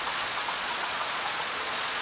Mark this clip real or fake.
fake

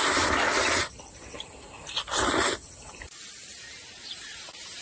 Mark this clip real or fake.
real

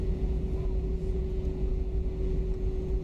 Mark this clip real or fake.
fake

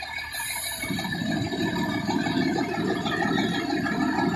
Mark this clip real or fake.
real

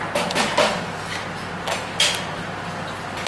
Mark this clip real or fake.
real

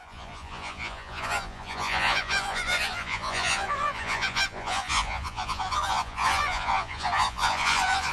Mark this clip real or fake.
fake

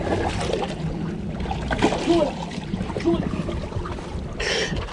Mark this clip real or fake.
real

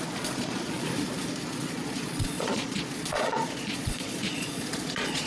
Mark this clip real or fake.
fake